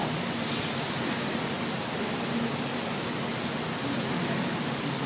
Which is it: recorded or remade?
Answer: recorded